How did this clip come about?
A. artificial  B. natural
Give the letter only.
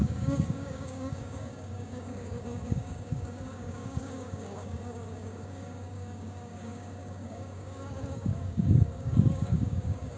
A